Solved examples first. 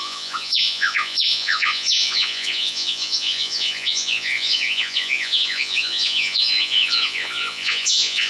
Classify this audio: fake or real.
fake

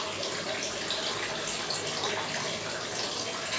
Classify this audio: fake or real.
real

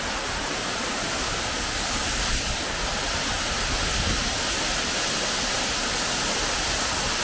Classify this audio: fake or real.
real